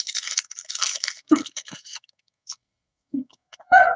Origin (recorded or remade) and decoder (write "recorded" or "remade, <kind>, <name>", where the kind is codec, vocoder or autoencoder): remade, codec, SNAC